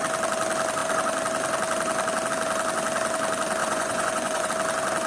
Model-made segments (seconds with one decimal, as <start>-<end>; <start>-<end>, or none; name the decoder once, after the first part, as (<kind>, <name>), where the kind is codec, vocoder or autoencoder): 3.6-4.5 (vocoder, Vocos)